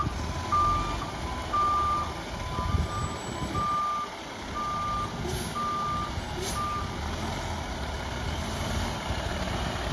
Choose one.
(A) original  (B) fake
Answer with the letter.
A